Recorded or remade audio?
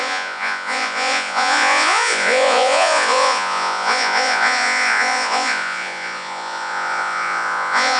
remade